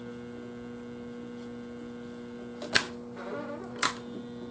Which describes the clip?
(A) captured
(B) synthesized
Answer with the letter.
A